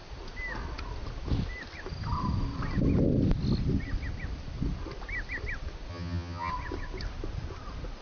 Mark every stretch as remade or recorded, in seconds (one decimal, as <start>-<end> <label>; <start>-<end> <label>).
0.0-5.9 recorded; 5.9-6.5 remade; 6.5-8.0 recorded